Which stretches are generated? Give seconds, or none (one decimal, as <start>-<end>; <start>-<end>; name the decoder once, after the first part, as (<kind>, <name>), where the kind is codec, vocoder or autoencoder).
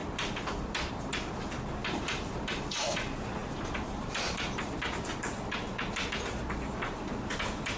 0.0-0.9 (vocoder, BigVGAN v2); 1.8-2.6; 3.4-4.6